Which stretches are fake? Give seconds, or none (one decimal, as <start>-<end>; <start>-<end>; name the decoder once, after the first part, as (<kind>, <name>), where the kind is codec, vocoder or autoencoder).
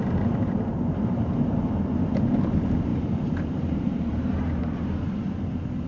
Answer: 0.0-1.8 (vocoder, BigVGAN v2); 2.9-4.6